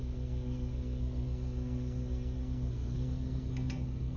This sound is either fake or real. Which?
fake